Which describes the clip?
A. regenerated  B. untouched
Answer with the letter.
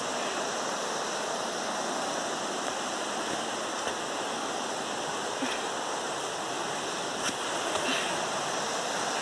B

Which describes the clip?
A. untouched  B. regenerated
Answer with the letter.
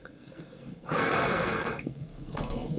B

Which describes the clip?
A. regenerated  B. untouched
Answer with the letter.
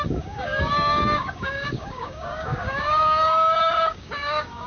A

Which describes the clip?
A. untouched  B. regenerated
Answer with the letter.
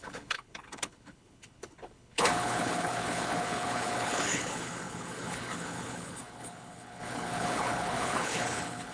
B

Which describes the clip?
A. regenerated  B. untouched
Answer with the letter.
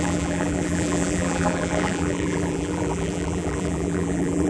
A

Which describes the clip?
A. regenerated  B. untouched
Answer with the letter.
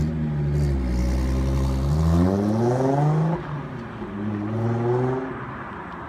B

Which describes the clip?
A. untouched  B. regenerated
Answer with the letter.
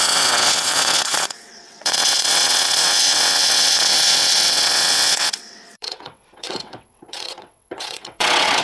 B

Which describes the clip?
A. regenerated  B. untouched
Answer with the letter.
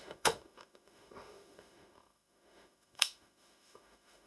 A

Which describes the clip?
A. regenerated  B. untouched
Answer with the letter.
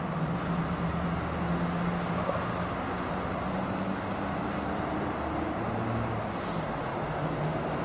B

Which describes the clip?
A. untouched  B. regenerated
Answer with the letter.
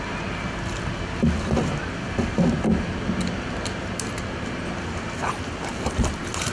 A